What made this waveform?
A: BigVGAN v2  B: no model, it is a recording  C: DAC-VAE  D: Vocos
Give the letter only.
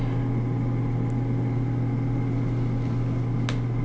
B